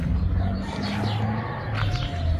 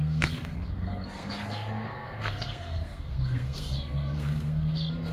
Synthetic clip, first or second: second